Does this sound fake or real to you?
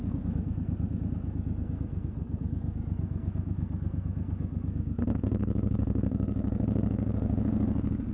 fake